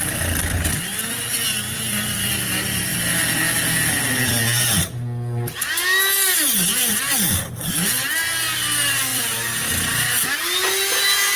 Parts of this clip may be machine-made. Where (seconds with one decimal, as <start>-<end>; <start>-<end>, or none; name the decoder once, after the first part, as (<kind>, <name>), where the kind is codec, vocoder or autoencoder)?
1.2-2.3 (vocoder, BigVGAN v2); 9.1-9.8